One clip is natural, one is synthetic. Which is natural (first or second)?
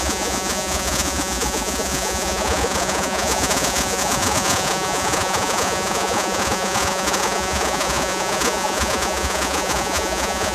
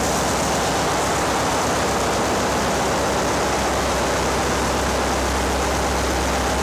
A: second